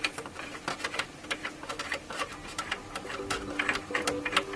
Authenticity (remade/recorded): recorded